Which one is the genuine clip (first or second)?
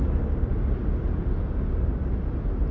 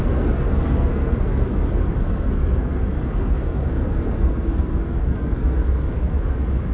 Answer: first